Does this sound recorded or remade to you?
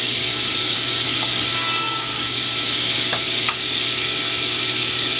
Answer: remade